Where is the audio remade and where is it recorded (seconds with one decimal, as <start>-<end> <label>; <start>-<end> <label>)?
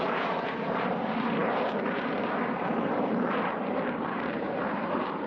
0.0-5.3 remade